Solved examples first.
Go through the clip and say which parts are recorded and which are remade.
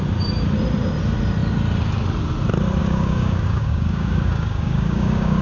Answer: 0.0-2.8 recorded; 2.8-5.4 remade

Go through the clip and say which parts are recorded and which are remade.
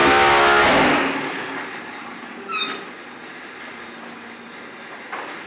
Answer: 0.0-0.6 remade; 0.6-5.5 recorded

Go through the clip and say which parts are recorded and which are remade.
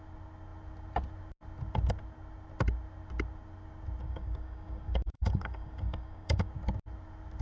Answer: 0.0-4.0 recorded; 4.0-6.5 remade; 6.5-7.4 recorded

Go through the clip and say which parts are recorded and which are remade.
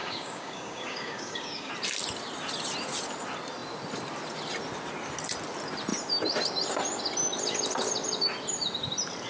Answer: 0.0-1.7 remade; 1.7-9.3 recorded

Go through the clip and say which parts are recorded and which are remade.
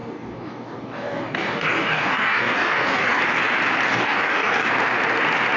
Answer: 0.0-3.2 remade; 3.2-3.9 recorded; 3.9-4.7 remade; 4.7-5.6 recorded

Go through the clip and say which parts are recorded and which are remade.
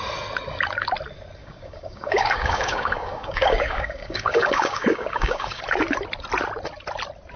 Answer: 0.0-1.4 recorded; 1.4-5.6 remade; 5.6-7.4 recorded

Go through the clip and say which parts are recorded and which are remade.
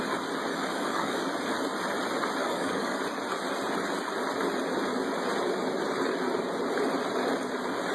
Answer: 0.0-0.5 recorded; 0.5-1.2 remade; 1.2-2.4 recorded; 2.4-3.0 remade; 3.0-7.9 recorded